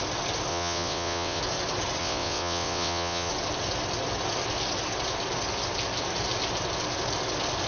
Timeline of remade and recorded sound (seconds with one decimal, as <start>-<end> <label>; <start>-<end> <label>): 0.0-0.5 recorded; 0.5-1.4 remade; 1.4-2.0 recorded; 2.0-3.3 remade; 3.3-7.7 recorded